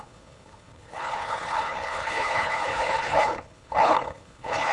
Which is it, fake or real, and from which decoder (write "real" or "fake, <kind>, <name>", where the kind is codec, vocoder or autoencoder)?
fake, codec, HILCodec